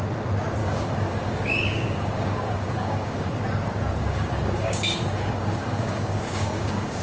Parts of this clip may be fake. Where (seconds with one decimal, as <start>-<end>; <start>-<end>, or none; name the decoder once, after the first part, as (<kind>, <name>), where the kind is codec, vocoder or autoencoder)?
0.6-3.3 (codec, DAC); 4.0-7.0